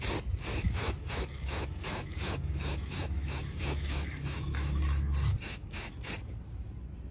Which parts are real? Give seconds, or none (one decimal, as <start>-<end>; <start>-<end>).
0.0-0.5; 4.8-5.3; 6.1-7.1